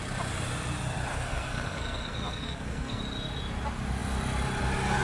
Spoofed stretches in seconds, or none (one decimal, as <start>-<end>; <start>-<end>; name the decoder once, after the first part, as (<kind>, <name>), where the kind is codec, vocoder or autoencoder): 1.1-3.0 (codec, SNAC)